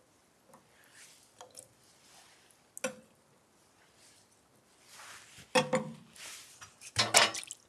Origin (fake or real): real